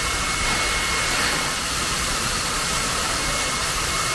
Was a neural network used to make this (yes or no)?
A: yes